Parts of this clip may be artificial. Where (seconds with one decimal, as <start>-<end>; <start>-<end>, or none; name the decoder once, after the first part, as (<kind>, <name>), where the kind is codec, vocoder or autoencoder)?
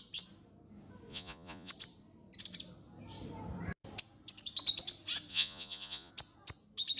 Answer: 1.1-1.7 (vocoder, Vocos); 5.3-6.1